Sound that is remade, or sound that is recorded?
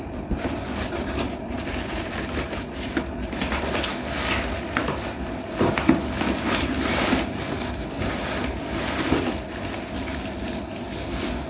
recorded